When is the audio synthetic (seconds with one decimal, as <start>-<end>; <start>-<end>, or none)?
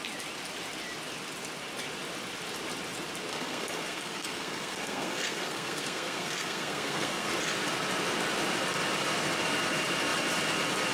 3.3-7.3